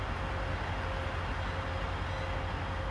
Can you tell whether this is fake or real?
real